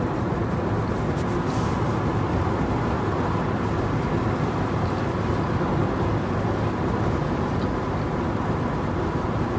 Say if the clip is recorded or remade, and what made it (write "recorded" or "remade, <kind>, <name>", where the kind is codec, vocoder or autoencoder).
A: recorded